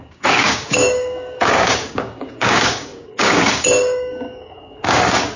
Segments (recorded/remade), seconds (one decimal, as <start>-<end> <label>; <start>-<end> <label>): 0.0-5.4 remade